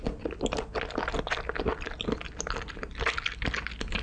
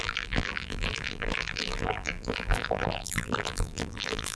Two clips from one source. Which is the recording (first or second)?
first